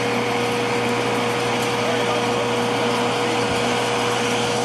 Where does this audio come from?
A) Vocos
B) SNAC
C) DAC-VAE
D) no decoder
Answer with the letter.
D